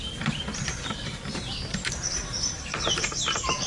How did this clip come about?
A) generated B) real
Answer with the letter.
A